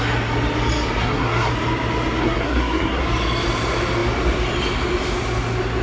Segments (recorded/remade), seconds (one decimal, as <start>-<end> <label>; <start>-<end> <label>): 0.0-1.0 recorded; 1.0-1.5 remade; 1.5-2.2 recorded; 2.2-3.0 remade; 3.0-5.8 recorded